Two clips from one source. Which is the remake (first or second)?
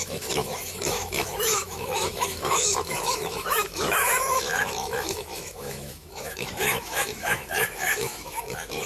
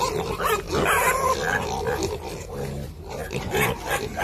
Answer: first